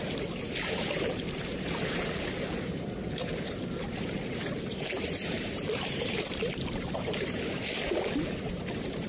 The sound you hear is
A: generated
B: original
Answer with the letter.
A